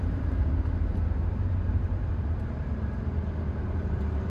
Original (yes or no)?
no